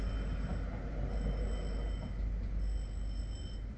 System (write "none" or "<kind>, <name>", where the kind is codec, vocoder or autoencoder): none